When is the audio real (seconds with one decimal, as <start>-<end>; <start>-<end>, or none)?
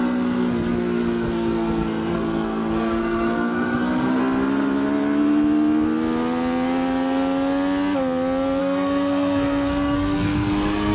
4.2-8.6